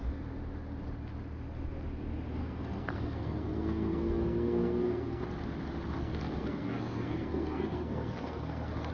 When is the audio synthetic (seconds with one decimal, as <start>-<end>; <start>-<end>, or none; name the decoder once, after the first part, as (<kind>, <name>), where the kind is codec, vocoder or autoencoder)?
2.4-5.2 (codec, SNAC); 6.0-8.9